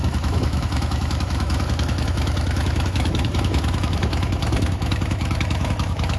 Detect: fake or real fake